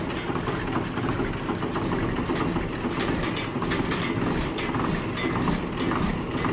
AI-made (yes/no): no